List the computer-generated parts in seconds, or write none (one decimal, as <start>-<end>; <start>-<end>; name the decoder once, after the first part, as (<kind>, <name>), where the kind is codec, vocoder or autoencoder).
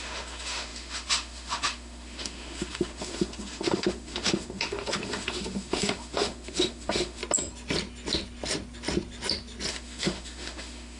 0.0-7.2 (autoencoder, DAC-VAE); 9.7-11.0